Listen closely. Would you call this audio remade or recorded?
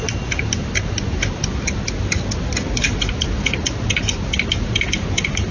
recorded